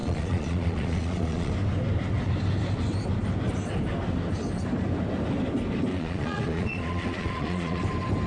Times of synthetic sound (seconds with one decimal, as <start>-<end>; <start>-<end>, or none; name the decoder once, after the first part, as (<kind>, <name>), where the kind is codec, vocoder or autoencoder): 0.0-1.5 (vocoder, Vocos); 5.9-7.8